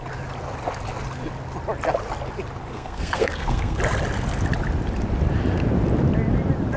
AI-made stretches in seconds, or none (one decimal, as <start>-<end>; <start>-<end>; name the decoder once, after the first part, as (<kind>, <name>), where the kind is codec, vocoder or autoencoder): 2.7-3.8 (codec, SNAC)